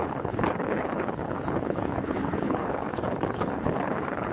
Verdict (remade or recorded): remade